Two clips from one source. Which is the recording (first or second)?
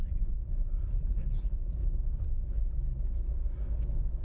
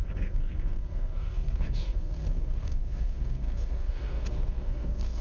first